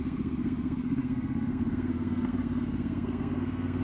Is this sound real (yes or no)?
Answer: no